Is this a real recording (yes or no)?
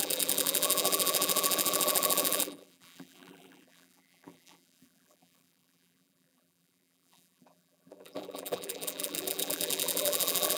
no